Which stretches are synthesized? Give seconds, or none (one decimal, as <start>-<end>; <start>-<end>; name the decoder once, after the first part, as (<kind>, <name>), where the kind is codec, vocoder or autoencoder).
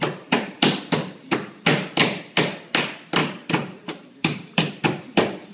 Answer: 3.2-4.8 (vocoder, BigVGAN v2)